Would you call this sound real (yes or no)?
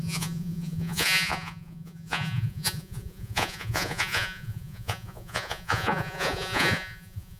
no